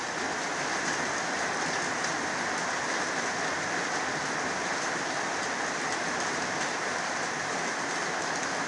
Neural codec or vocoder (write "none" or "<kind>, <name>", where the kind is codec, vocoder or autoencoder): none